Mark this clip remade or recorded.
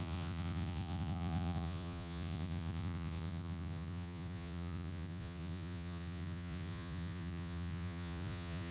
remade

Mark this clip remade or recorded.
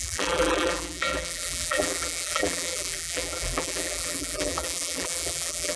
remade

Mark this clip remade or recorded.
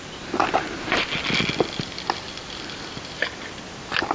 recorded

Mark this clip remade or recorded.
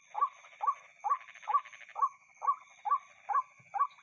recorded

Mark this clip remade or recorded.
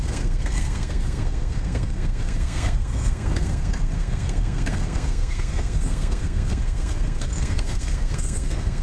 remade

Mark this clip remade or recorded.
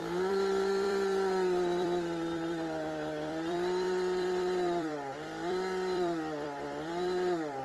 remade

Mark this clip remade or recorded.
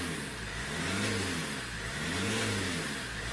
recorded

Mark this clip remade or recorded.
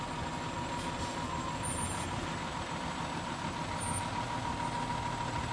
recorded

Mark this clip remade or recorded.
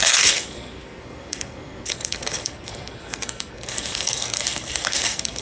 remade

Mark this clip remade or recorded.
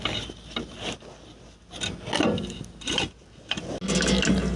recorded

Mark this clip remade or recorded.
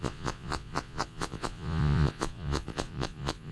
remade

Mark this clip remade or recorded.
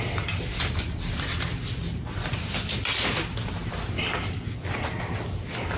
recorded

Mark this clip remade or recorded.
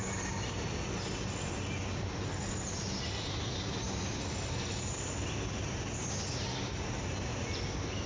recorded